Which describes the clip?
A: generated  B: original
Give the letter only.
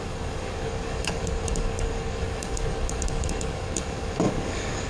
A